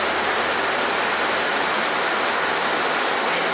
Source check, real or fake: real